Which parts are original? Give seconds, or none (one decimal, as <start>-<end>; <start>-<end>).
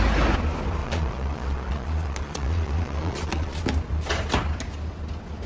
0.0-0.8; 3.6-5.5